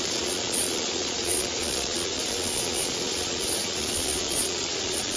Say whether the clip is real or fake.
fake